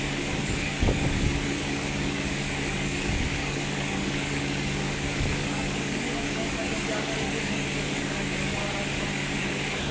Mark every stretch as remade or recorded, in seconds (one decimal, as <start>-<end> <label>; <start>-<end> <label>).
0.0-8.6 remade; 8.6-9.1 recorded; 9.1-9.9 remade